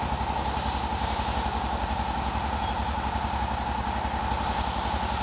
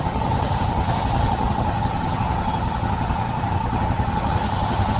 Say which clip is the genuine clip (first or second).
first